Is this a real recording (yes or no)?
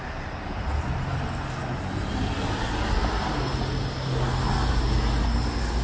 yes